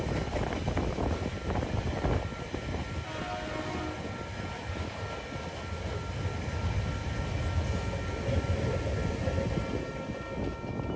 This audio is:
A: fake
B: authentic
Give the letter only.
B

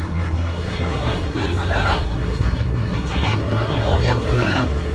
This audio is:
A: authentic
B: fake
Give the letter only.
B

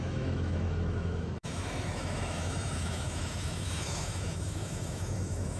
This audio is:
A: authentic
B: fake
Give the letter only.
B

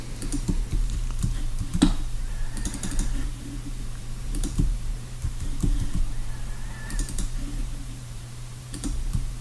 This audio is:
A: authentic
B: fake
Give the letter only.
B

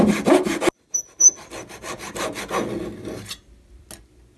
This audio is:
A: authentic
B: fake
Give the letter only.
A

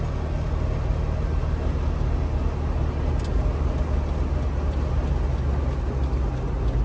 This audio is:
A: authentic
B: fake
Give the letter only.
A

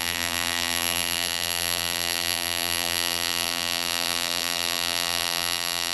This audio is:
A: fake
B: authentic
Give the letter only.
A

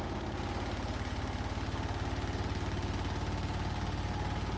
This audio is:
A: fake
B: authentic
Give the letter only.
B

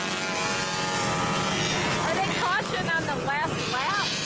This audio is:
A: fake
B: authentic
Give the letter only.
B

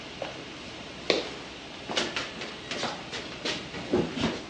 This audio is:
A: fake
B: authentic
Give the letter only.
B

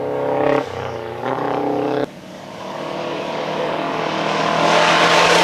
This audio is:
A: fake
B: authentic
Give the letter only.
A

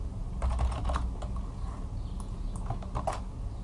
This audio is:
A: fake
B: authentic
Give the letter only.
B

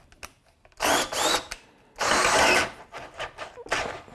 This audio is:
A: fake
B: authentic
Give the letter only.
B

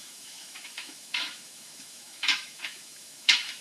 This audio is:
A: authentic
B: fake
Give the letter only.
B